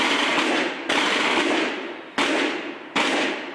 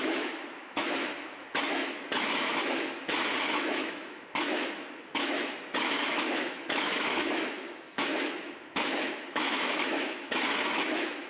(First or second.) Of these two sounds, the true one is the first